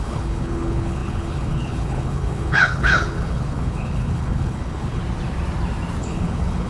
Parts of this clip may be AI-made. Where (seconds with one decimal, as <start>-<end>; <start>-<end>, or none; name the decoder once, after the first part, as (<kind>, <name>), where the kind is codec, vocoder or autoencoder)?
0.0-5.0 (codec, HILCodec); 6.0-6.7